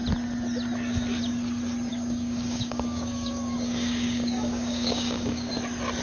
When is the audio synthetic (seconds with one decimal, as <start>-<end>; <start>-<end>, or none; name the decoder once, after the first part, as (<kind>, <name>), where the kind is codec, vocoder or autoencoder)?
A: 1.9-5.5 (codec, DAC)